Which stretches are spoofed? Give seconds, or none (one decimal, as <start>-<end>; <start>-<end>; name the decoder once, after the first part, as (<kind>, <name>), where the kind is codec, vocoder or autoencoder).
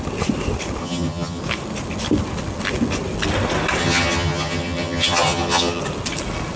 0.8-1.4 (vocoder, HiFi-GAN); 3.8-5.8